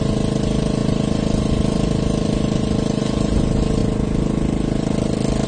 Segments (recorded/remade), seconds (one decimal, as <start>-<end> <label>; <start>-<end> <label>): 0.0-5.5 recorded